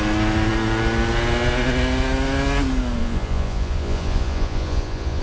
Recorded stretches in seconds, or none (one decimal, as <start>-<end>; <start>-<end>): 0.0-3.0